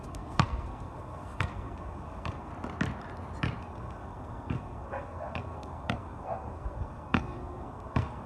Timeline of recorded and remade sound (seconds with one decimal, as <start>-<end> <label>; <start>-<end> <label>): 0.0-2.5 remade; 2.5-3.6 recorded; 3.6-8.3 remade